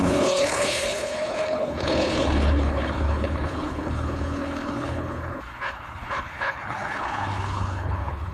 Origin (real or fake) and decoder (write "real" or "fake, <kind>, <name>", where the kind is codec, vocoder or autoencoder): fake, codec, HILCodec